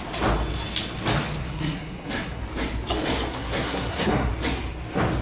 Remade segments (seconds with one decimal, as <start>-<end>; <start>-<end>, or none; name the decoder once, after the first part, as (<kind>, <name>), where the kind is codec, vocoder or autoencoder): 1.4-2.4 (codec, SNAC); 3.3-4.3